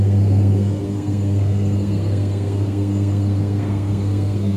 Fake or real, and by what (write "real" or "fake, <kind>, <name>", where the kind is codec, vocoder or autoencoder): fake, codec, SNAC